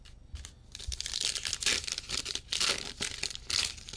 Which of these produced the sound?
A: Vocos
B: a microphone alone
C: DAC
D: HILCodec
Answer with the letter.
B